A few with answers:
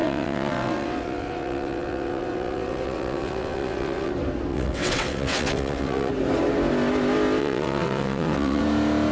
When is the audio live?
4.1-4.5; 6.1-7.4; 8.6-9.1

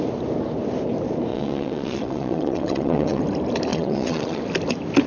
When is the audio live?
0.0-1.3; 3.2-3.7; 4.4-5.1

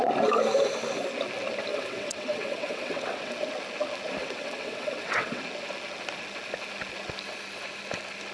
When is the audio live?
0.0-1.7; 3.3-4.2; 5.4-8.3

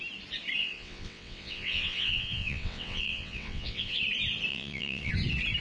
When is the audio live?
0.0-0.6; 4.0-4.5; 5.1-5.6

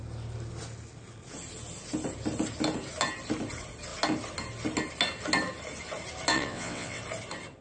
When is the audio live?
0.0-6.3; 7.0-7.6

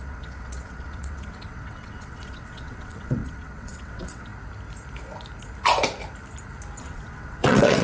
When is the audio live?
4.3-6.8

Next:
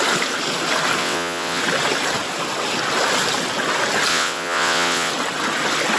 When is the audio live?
0.0-1.0; 1.6-4.1; 5.1-6.0

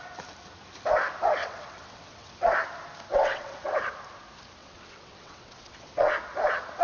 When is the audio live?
0.0-1.4; 2.5-3.1; 3.7-4.6; 6.1-6.8